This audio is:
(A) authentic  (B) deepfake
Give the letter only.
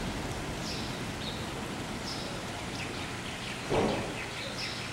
A